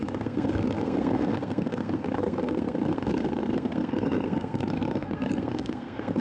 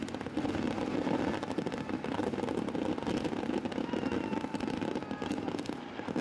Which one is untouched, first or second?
second